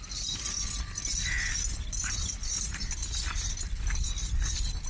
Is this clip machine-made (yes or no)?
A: no